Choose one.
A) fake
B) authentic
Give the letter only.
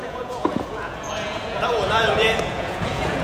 A